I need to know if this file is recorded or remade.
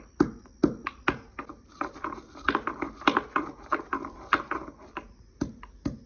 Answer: recorded